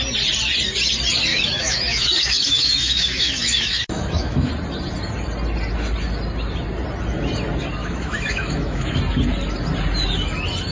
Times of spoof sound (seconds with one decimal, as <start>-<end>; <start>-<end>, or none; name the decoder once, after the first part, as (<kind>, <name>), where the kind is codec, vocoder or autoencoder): 1.3-4.5 (autoencoder, DAC-VAE); 7.8-9.0